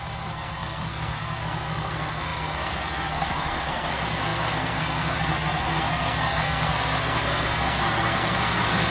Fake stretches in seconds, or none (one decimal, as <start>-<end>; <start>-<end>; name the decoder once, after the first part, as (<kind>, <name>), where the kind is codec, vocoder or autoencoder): 0.0-8.9 (codec, SNAC)